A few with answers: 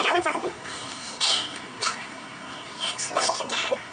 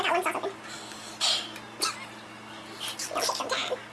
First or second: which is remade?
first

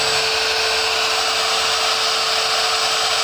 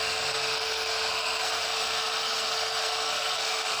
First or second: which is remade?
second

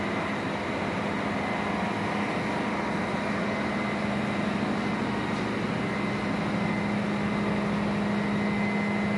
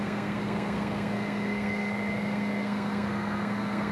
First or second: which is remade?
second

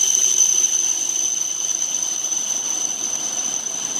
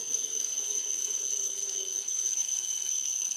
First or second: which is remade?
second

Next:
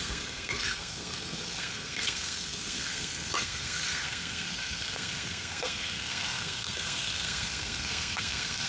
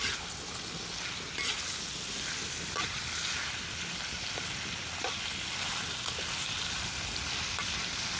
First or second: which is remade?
first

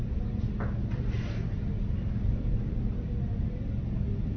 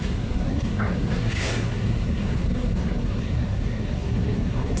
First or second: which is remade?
second